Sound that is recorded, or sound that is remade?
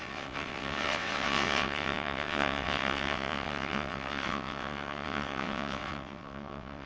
remade